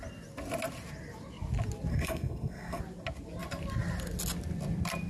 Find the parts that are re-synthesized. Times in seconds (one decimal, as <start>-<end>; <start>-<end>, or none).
1.9-2.8